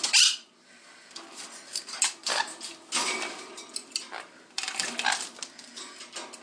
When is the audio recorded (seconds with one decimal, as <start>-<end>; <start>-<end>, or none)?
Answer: 0.0-6.4